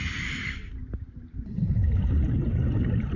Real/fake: real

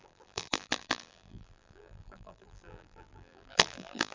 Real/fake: fake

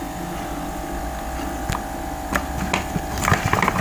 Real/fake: real